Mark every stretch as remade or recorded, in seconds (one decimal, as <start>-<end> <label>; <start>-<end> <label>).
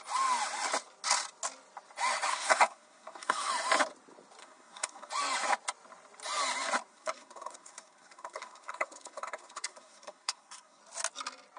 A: 0.0-2.3 recorded; 2.3-3.5 remade; 3.5-4.4 recorded; 4.4-5.1 remade; 5.1-6.9 recorded; 6.9-10.8 remade; 10.8-11.6 recorded